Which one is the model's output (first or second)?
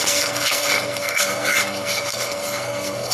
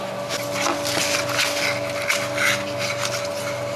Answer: first